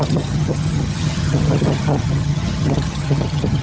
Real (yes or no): no